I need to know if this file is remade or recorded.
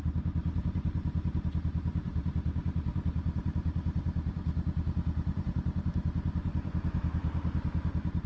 remade